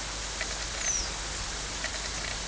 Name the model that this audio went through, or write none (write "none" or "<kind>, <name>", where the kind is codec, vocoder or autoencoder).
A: none